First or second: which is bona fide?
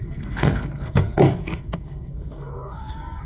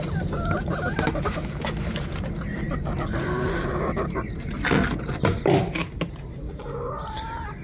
second